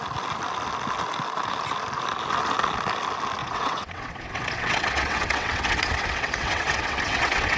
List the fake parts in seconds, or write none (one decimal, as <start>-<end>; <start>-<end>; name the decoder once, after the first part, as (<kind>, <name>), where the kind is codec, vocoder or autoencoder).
3.4-7.6 (vocoder, WaveNeXt)